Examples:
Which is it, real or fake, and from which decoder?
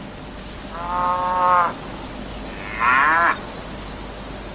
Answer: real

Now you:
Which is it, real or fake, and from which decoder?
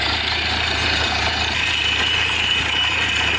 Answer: fake, vocoder, BigVGAN v2